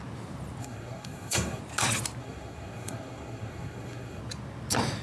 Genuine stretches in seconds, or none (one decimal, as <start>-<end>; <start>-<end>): 0.0-0.6; 1.6-2.2; 4.2-5.0